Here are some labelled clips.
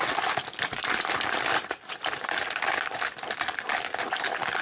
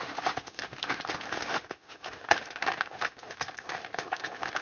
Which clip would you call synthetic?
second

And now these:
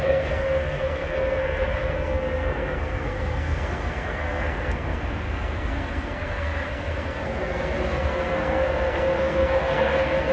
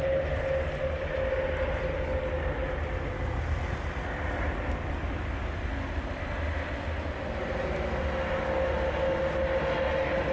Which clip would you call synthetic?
first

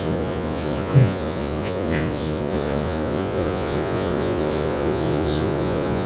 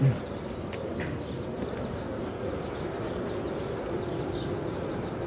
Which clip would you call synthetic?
first